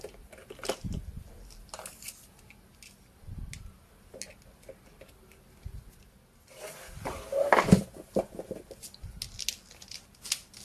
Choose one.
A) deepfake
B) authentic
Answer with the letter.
B